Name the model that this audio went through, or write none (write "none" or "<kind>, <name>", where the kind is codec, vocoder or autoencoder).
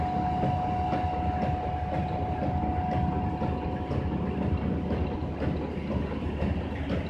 none